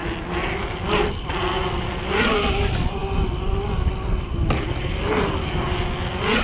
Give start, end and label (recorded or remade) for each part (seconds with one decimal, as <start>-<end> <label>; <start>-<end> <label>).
0.0-6.4 recorded